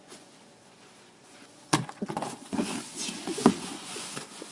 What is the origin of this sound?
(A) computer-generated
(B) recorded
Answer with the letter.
A